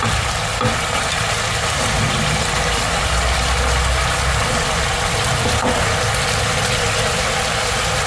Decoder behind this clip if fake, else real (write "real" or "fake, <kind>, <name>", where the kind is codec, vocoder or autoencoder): real